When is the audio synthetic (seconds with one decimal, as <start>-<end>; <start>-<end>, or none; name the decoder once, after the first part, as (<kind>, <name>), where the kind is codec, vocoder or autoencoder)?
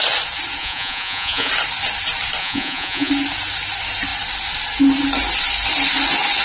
0.6-1.5 (vocoder, Vocos); 2.4-3.1